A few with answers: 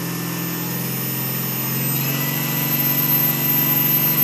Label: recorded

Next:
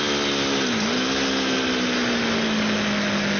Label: recorded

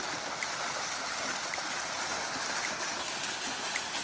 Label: remade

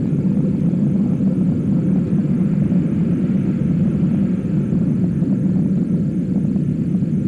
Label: remade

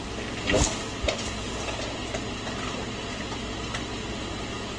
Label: recorded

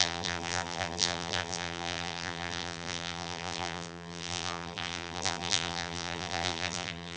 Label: remade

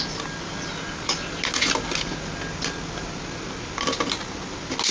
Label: recorded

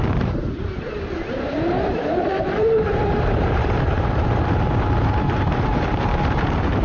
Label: remade